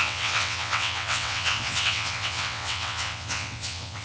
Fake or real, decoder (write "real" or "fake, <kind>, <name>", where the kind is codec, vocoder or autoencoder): fake, vocoder, WaveNeXt